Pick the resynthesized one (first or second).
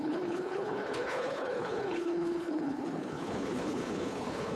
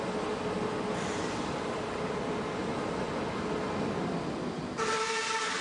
first